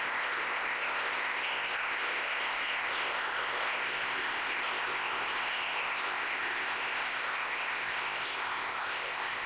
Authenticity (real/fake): fake